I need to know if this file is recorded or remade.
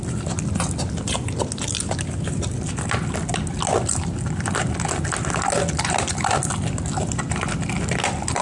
recorded